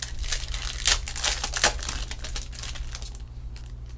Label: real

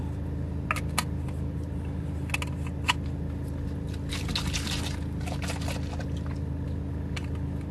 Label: real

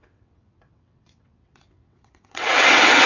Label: fake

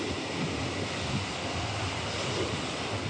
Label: real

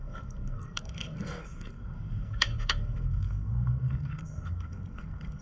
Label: fake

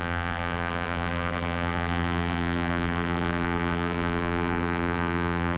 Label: fake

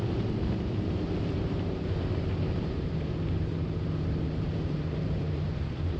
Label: fake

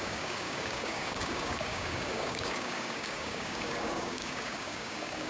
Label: fake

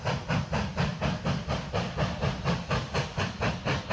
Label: real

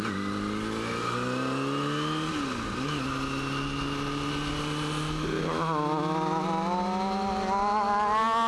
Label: real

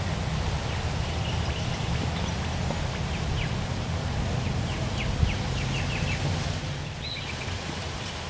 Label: real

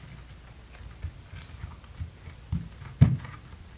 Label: real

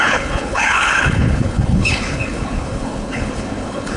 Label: fake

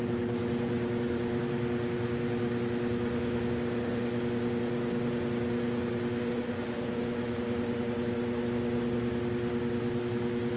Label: real